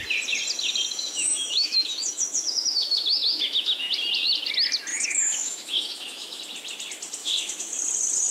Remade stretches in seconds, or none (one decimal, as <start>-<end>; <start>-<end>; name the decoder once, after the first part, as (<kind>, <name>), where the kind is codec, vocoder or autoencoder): 0.9-3.9 (autoencoder, DAC-VAE); 4.9-6.4; 7.2-7.8